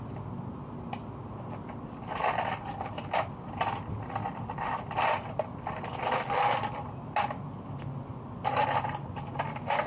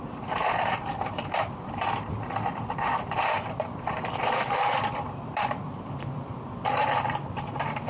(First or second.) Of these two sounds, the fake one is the second